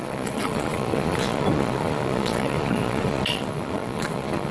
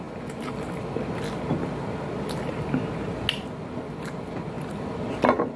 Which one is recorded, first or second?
second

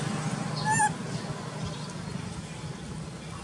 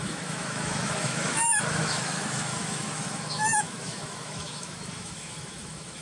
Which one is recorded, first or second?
first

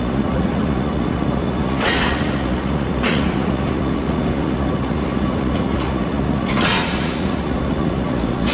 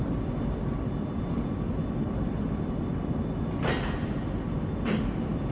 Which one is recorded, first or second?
second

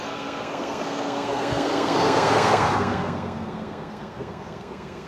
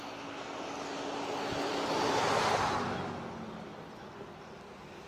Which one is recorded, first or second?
second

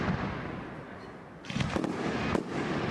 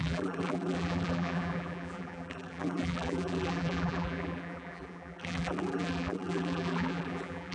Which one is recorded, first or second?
first